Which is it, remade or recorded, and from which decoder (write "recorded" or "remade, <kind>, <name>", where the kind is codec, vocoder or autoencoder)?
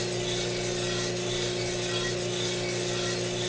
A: recorded